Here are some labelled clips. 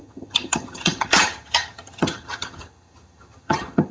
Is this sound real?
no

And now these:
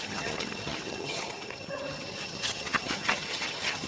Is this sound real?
no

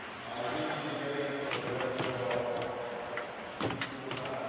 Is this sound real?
yes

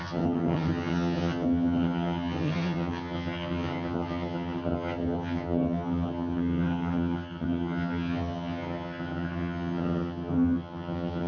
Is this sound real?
no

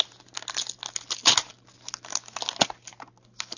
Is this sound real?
yes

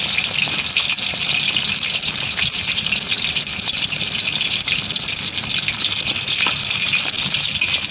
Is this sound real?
yes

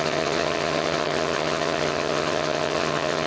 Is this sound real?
no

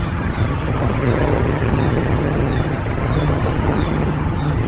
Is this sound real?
no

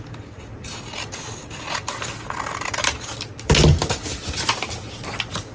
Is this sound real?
yes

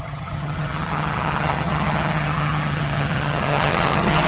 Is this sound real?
no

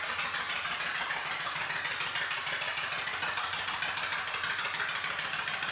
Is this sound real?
yes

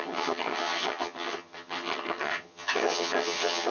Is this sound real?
no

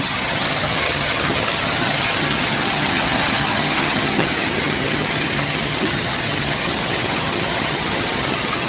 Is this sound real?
no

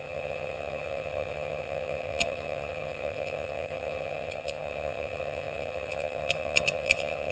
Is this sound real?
no